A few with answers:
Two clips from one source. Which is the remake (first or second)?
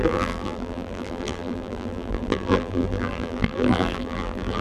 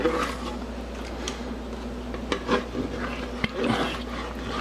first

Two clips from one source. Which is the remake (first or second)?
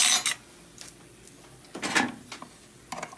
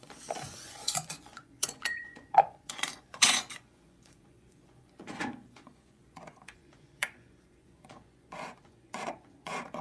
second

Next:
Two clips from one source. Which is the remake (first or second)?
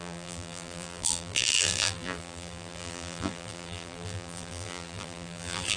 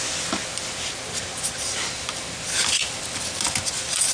first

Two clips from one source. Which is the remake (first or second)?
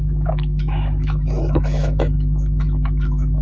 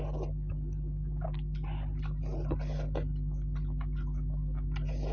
first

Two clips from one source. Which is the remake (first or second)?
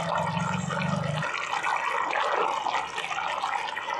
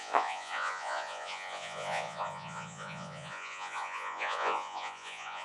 second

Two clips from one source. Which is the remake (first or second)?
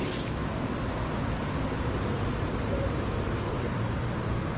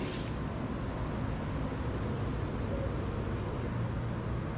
first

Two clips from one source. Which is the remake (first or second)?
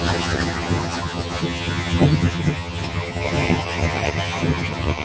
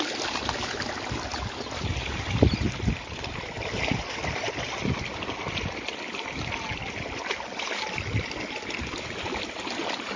first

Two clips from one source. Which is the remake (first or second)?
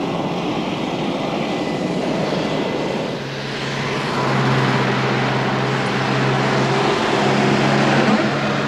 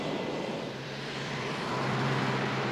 second